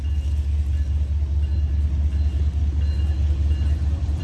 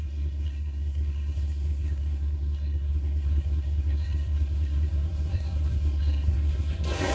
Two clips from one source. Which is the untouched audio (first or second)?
first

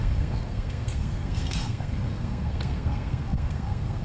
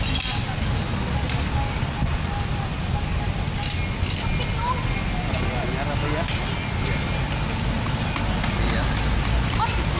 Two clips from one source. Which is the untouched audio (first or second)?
second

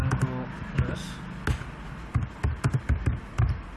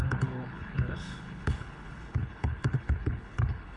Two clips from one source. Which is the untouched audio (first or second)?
first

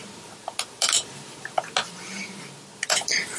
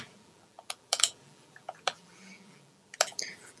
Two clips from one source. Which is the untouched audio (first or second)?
first